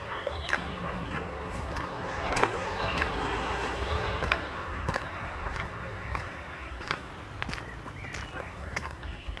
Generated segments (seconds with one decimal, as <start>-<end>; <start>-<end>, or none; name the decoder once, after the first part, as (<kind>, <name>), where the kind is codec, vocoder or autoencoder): 0.0-7.1 (codec, SNAC); 8.4-9.4